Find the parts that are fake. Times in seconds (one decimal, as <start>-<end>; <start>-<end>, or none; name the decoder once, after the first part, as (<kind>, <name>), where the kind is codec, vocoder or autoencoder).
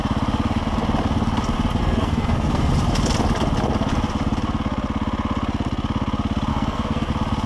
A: 1.8-2.7 (codec, SNAC); 6.5-7.1